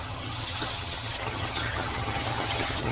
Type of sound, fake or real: fake